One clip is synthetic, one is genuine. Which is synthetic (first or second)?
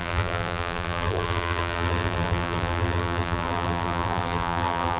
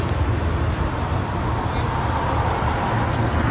first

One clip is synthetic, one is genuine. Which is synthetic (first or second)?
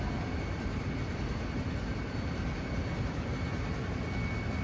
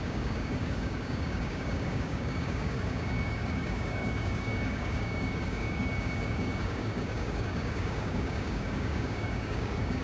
second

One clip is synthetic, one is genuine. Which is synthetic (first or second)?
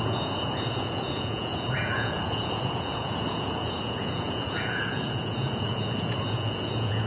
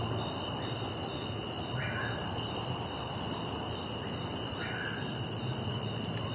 first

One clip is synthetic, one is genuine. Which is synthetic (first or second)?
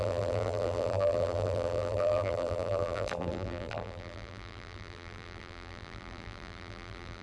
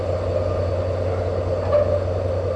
first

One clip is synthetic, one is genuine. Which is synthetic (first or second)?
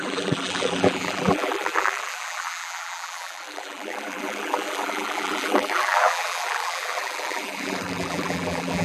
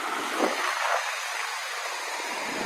first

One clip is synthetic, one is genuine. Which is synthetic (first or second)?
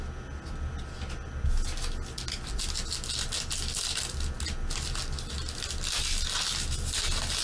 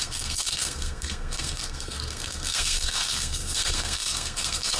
second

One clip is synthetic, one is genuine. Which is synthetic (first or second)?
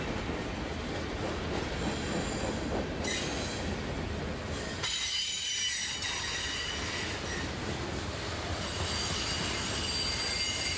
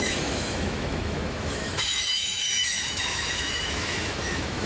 second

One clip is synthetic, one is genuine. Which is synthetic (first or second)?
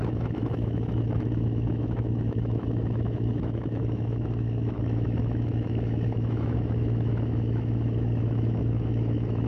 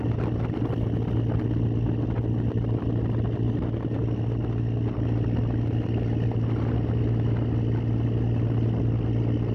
first